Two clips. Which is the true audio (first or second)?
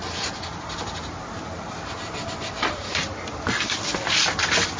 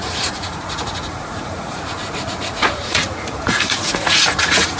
first